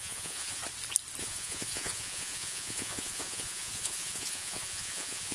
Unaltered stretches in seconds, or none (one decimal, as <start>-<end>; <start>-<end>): 0.6-1.2